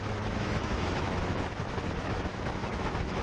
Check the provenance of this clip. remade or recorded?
remade